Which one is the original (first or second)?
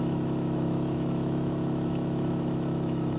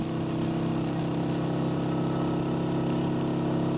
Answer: second